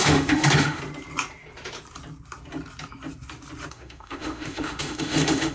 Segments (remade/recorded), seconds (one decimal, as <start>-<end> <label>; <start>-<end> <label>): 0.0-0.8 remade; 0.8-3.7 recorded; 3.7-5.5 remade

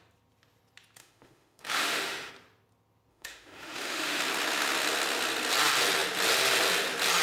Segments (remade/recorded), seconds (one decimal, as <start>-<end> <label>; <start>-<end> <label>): 0.0-1.0 recorded; 1.0-2.3 remade; 2.3-3.1 recorded; 3.1-4.2 remade; 4.2-7.2 recorded

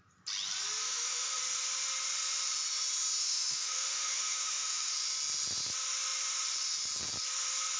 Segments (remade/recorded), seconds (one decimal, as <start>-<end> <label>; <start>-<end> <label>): 0.0-0.8 recorded; 0.8-1.4 remade; 1.4-3.2 recorded; 3.2-4.9 remade; 4.9-7.8 recorded